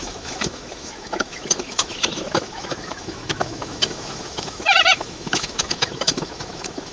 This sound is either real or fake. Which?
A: fake